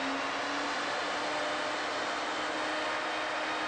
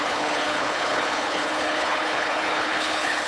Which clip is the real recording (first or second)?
first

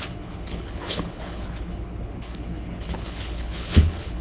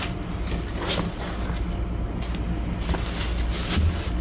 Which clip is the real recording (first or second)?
second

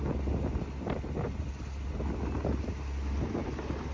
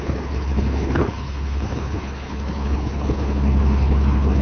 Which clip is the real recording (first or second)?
first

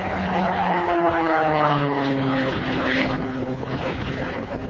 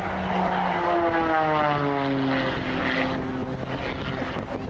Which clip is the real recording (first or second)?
second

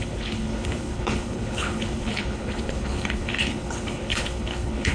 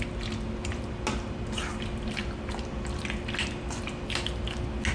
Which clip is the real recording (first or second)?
second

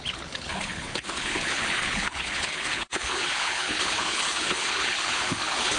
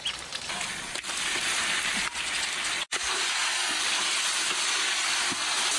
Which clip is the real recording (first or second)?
second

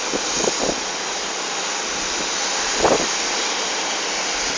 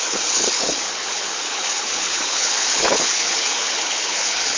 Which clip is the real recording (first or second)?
first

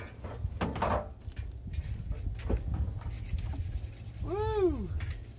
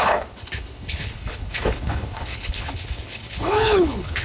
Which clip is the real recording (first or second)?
first